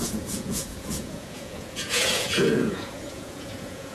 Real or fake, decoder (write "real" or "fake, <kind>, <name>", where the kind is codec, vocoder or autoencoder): fake, vocoder, Vocos